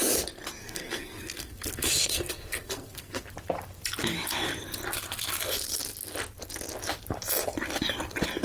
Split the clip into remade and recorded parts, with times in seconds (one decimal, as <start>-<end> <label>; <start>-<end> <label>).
0.0-0.6 recorded; 0.6-3.2 remade; 3.2-8.4 recorded